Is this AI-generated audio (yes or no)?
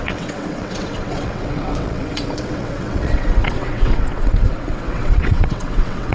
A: yes